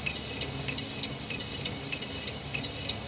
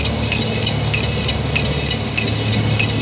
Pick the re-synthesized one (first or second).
first